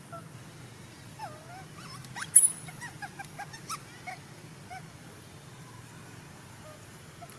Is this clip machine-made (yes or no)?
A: no